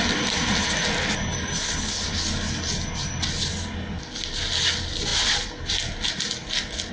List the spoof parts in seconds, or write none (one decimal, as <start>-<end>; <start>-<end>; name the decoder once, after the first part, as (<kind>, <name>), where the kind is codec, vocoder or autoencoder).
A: none